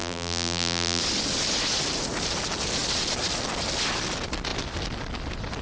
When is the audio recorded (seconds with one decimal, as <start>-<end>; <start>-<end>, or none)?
1.0-5.6